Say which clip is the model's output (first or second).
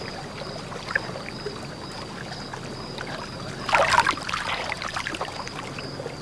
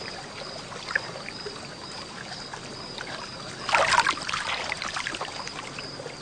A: second